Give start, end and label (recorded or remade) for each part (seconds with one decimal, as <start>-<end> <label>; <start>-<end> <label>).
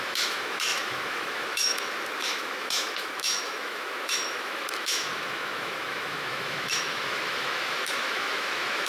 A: 0.0-8.9 remade